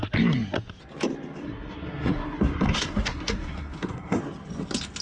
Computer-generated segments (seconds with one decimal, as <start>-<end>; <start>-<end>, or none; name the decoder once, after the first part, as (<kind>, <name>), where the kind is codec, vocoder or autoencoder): 1.4-4.2 (codec, SNAC)